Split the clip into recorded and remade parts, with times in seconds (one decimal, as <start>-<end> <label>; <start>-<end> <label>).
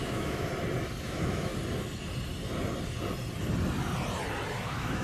0.0-0.5 remade; 0.5-1.0 recorded; 1.0-1.5 remade; 1.5-4.5 recorded; 4.5-5.0 remade